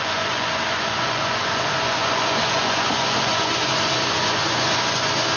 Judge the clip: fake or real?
fake